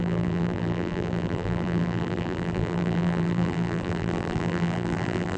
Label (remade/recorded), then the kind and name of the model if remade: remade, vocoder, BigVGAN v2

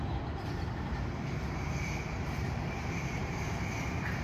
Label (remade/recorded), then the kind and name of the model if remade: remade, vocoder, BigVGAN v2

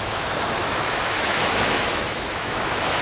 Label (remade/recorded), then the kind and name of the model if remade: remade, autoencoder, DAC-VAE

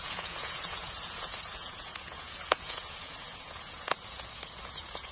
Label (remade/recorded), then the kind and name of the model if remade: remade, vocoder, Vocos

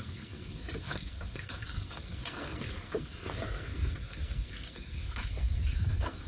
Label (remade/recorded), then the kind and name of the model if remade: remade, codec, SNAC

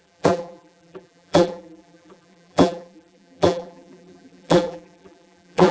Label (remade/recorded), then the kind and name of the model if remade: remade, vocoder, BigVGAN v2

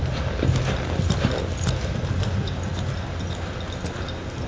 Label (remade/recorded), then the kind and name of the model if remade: recorded